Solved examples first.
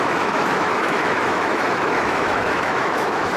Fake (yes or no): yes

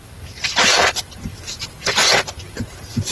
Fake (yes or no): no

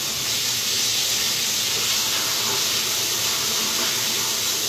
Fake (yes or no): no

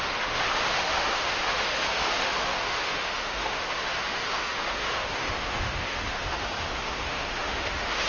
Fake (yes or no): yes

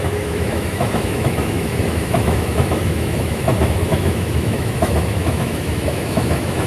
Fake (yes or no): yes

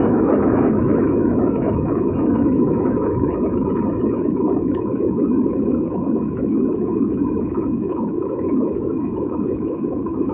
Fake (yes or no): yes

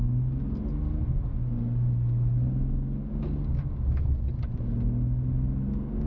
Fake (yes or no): no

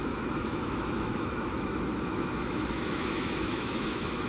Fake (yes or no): yes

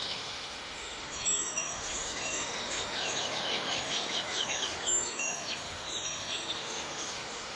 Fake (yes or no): yes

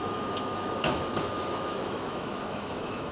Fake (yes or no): yes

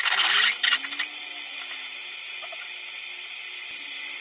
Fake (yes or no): no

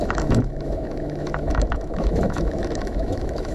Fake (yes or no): yes